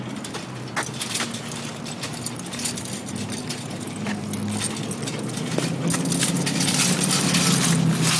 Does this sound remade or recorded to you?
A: recorded